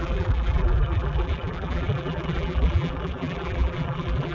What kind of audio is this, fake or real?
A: fake